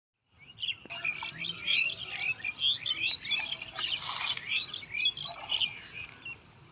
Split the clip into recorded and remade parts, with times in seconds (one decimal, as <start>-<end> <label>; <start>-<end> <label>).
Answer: 0.0-6.7 recorded